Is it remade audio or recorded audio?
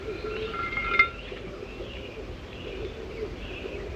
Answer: recorded